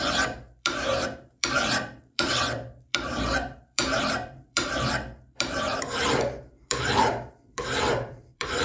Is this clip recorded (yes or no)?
no